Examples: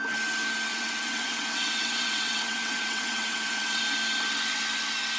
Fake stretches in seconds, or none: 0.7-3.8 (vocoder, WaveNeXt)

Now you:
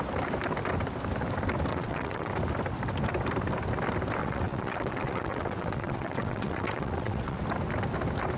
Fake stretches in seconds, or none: 1.7-2.3 (vocoder, WaveNeXt); 4.2-7.4